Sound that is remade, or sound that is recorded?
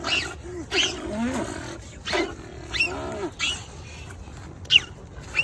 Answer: recorded